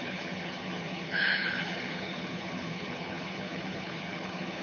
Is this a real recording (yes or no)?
no